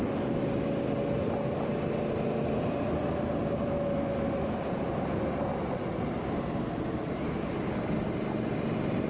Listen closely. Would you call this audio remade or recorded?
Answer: recorded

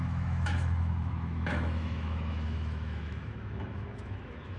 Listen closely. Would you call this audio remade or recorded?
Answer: remade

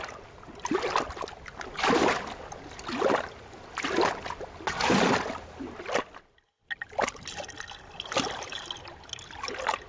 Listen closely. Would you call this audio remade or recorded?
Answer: recorded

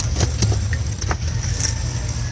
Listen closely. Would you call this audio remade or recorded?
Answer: recorded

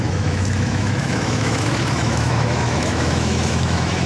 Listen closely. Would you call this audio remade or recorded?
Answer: remade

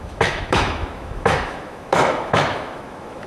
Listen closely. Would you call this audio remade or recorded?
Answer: remade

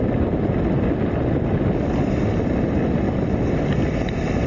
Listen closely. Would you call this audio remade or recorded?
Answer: recorded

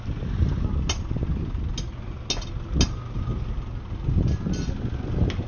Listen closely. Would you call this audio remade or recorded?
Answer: recorded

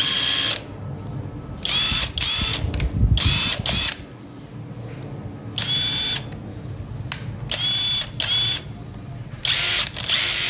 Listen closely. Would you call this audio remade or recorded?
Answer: recorded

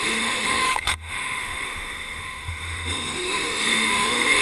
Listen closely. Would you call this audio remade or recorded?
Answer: remade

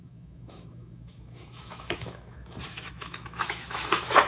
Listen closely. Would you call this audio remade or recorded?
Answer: remade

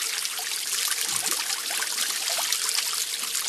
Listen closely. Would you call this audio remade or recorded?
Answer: recorded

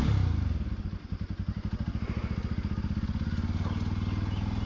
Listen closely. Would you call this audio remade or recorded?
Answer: recorded